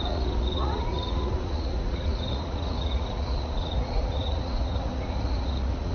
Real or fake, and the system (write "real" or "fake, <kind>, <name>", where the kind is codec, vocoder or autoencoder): fake, vocoder, Vocos